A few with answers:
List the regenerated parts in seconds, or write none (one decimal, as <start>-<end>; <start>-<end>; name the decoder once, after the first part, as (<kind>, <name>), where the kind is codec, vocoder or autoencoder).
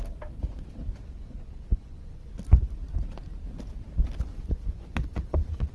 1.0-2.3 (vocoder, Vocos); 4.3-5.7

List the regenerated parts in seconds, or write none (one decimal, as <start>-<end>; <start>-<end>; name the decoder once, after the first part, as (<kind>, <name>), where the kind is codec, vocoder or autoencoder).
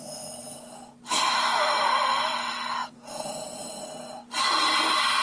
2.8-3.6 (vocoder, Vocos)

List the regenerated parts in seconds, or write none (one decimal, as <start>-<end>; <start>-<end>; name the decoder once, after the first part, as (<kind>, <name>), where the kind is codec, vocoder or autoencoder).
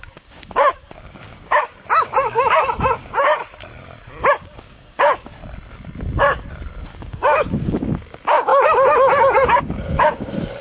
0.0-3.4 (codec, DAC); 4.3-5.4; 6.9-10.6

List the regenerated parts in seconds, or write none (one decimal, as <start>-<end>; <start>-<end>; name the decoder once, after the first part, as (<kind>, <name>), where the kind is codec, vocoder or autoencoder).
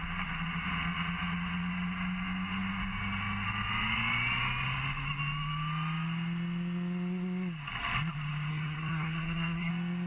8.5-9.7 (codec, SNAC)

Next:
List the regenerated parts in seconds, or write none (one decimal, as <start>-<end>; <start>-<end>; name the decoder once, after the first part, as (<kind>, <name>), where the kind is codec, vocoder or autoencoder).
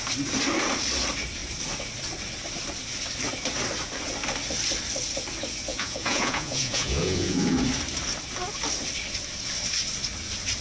5.7-7.6 (vocoder, Vocos)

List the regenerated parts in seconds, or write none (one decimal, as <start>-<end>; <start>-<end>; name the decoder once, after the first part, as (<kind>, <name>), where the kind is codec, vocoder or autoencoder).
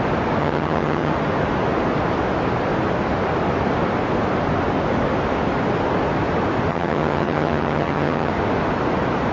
0.4-1.1 (vocoder, HiFi-GAN); 6.7-8.3